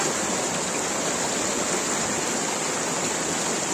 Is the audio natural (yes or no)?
yes